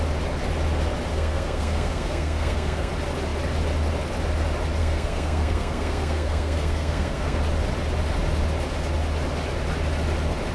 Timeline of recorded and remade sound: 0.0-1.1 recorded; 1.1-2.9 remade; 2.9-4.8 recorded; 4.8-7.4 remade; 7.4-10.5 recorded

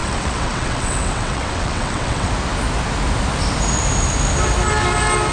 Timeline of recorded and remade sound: 0.0-2.3 remade; 2.3-5.3 recorded

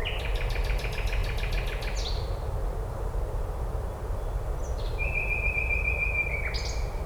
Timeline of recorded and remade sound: 0.0-7.1 recorded

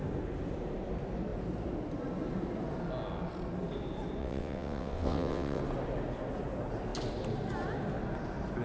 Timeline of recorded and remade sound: 0.0-4.2 recorded; 4.2-5.6 remade; 5.6-8.6 recorded